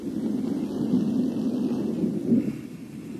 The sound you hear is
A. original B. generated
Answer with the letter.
A